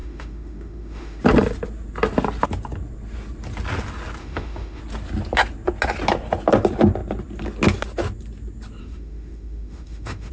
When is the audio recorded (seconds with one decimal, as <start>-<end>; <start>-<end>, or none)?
1.2-4.2; 4.8-8.8